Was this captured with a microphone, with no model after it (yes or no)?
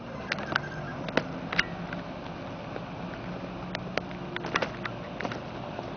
yes